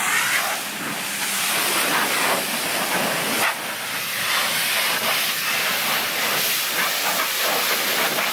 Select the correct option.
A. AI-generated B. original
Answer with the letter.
B